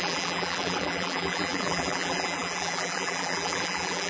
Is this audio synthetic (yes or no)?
yes